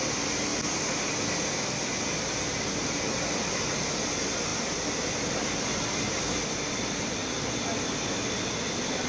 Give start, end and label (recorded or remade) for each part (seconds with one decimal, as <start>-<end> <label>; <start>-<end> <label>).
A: 0.0-4.5 recorded; 4.5-6.2 remade; 6.2-9.1 recorded